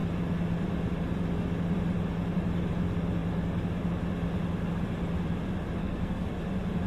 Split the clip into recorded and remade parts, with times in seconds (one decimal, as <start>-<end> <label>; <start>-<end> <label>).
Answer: 0.0-5.8 recorded; 5.8-6.3 remade; 6.3-6.9 recorded